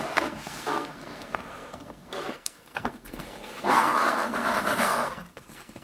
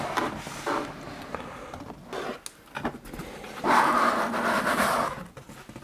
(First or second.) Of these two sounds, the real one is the second